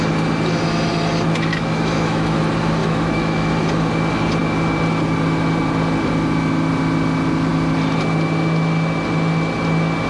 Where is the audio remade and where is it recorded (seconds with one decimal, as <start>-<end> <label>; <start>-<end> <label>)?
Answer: 0.0-1.5 recorded; 1.5-2.4 remade; 2.4-2.8 recorded; 2.8-3.5 remade; 3.5-10.1 recorded